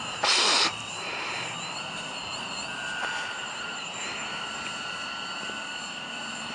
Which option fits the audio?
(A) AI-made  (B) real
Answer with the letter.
A